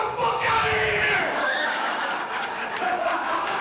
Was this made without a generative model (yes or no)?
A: no